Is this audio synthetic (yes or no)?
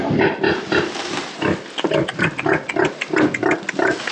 no